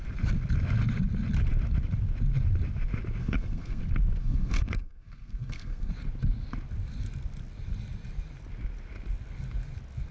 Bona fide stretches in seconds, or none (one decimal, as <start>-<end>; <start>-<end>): 0.0-3.2; 3.8-4.2; 5.9-10.1